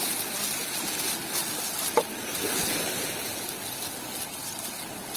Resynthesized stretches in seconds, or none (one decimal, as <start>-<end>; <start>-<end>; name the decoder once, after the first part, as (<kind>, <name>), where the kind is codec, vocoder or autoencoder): none